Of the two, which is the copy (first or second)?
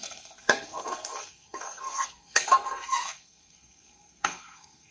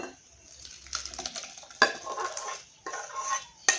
first